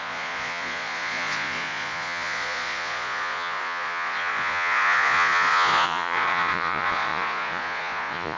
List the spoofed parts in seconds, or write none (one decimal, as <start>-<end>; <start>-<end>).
0.0-8.4